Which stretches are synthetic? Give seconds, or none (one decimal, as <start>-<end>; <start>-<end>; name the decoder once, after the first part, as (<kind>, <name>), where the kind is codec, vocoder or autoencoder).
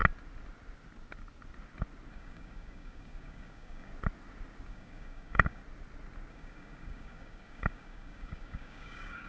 2.1-3.9 (codec, DAC); 4.7-5.6; 6.3-9.3